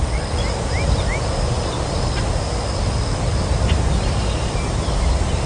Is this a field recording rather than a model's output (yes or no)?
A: yes